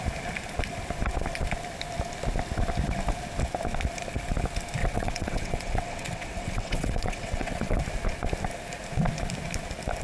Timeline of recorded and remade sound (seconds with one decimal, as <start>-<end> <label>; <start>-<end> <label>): 0.0-4.8 recorded; 4.8-7.8 remade; 7.8-10.0 recorded